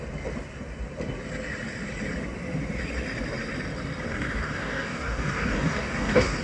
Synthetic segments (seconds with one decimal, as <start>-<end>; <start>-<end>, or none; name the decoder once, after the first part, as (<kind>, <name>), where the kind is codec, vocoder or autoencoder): 4.1-6.4 (codec, DAC)